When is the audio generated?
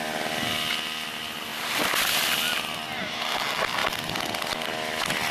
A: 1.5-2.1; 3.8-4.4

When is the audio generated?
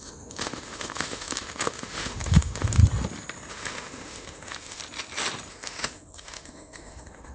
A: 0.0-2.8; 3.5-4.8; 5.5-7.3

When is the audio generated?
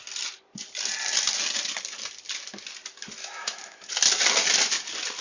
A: 3.2-3.9